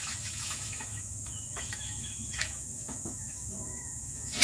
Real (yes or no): no